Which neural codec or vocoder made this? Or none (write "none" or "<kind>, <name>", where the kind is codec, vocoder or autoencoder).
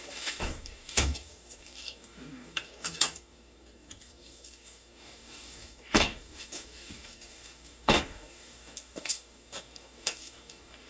codec, DAC